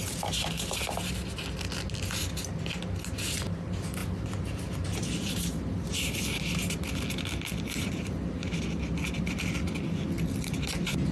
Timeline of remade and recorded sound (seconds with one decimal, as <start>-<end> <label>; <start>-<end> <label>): 0.0-11.1 recorded